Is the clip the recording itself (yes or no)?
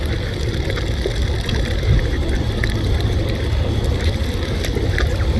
yes